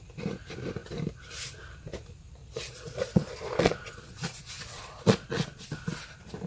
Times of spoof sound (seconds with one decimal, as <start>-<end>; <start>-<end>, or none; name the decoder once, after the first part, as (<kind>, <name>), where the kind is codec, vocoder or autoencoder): 2.4-5.7 (vocoder, Vocos)